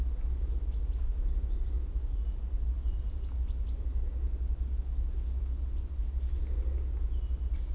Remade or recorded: recorded